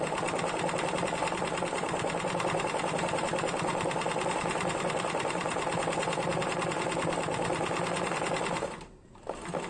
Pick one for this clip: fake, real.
fake